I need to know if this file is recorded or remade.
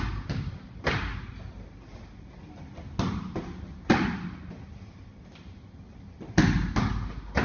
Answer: recorded